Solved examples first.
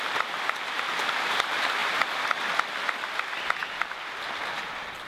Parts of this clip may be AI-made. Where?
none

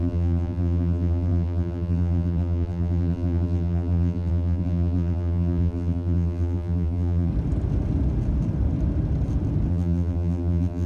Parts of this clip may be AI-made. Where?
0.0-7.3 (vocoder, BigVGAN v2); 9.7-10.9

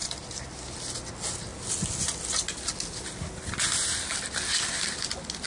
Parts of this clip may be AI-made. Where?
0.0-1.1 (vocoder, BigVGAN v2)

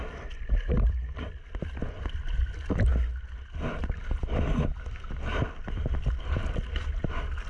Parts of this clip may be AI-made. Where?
none